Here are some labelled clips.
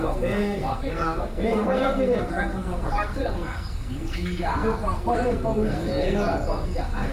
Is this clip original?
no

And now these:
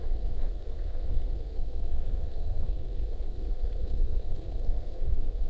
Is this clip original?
no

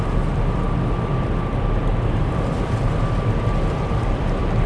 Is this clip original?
yes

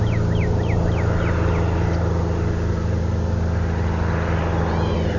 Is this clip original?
yes